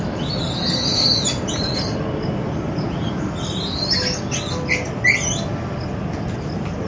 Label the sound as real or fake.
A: real